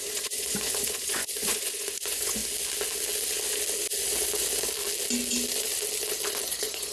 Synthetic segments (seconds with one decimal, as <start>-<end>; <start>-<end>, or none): 0.0-2.4; 6.5-6.9